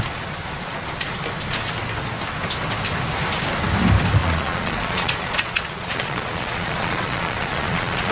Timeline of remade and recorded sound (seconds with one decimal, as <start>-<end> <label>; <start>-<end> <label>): 0.0-4.2 recorded; 4.2-8.1 remade